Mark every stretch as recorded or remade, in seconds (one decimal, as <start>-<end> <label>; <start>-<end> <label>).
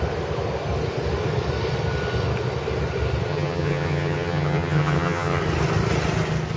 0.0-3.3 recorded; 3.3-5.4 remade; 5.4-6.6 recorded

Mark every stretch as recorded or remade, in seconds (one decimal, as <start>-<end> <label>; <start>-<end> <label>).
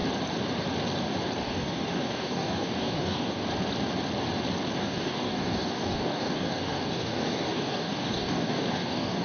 0.0-1.4 recorded; 1.4-3.4 remade; 3.4-4.8 recorded; 4.8-9.2 remade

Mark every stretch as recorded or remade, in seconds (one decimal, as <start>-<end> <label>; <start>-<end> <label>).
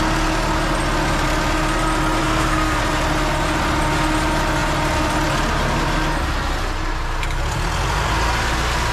0.0-2.2 recorded; 2.2-2.8 remade; 2.8-8.9 recorded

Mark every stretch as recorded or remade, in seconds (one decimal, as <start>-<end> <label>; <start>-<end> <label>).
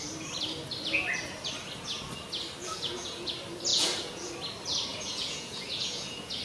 0.0-2.6 recorded; 2.6-3.3 remade; 3.3-3.7 recorded; 3.7-4.3 remade; 4.3-4.9 recorded; 4.9-6.4 remade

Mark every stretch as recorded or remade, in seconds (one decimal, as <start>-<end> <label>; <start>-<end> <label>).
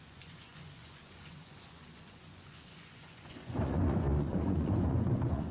0.0-5.5 remade